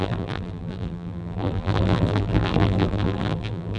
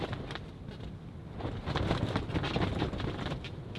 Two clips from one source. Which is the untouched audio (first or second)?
second